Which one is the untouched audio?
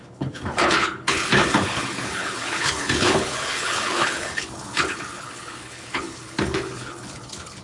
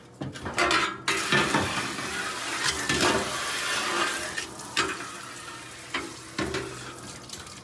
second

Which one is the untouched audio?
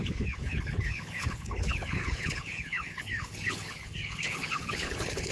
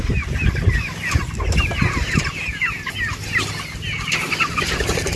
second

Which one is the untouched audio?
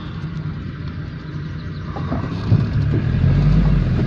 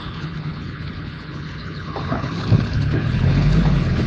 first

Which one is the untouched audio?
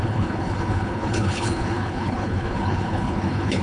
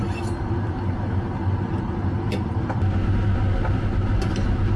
second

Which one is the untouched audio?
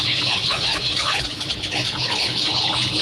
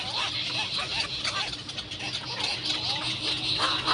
second